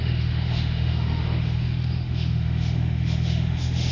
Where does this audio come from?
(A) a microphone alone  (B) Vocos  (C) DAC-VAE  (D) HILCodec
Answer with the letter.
C